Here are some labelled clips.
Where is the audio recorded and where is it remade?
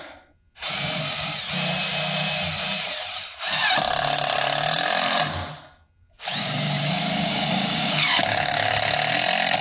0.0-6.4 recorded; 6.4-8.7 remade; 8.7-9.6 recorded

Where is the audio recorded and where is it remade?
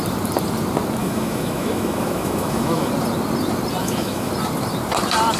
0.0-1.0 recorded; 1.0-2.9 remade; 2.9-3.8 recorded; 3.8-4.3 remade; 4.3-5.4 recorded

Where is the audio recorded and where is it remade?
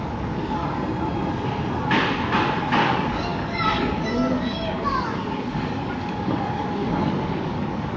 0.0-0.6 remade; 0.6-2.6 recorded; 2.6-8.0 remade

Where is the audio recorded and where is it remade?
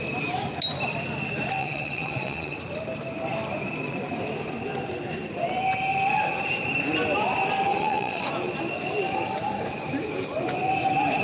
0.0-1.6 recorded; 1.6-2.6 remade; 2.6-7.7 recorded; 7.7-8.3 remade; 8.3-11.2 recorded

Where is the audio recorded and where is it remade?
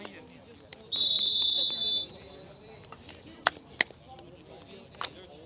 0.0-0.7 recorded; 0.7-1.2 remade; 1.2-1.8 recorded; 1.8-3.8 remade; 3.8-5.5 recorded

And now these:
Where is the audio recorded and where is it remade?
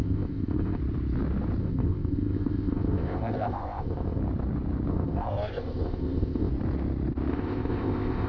0.0-0.8 remade; 0.8-1.6 recorded; 1.6-4.2 remade; 4.2-4.9 recorded; 4.9-6.5 remade; 6.5-7.3 recorded; 7.3-8.3 remade